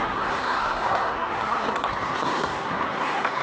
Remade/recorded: remade